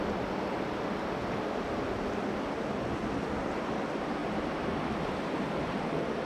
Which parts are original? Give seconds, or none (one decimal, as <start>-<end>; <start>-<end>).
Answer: 0.0-4.2; 4.8-6.3